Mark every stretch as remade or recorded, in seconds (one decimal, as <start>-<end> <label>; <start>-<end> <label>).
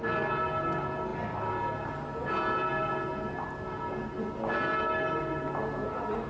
0.0-6.3 recorded